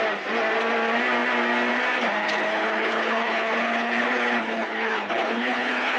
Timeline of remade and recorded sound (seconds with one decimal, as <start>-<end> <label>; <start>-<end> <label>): 0.0-2.2 recorded; 2.2-6.0 remade